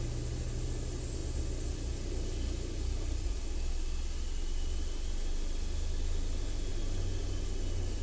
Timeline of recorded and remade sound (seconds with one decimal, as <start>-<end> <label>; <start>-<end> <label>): 0.0-8.0 recorded